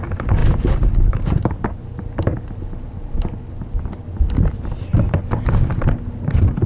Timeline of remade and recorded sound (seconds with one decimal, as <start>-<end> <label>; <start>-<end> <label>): 0.0-6.7 recorded